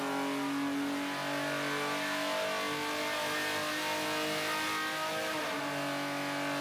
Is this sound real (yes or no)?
yes